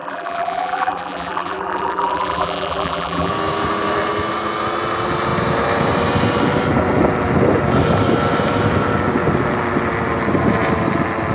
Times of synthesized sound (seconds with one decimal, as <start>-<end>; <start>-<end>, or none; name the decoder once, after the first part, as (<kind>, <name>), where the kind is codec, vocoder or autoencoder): 0.0-3.3 (vocoder, BigVGAN v2)